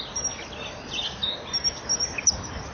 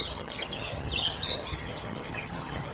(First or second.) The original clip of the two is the first